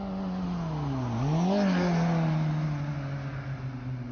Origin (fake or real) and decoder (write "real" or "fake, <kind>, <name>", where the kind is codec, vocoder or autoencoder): real